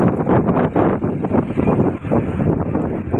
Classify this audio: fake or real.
fake